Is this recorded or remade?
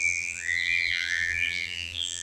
remade